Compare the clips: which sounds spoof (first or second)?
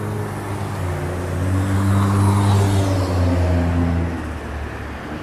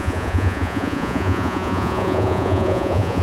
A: second